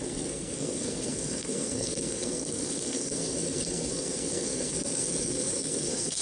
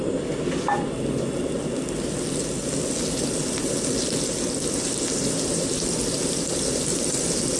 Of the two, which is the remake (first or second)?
first